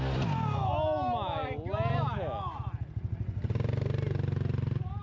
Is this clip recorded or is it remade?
recorded